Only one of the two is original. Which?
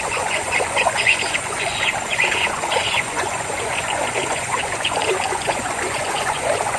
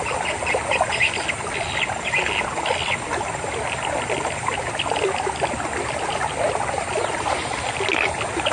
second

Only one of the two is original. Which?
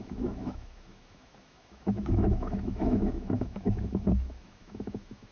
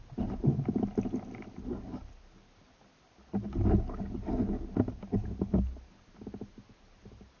second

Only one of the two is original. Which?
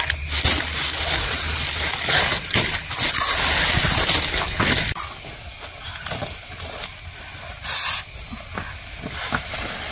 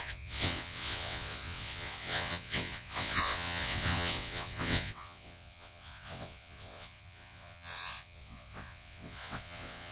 first